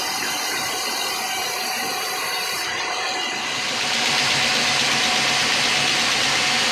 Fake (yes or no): no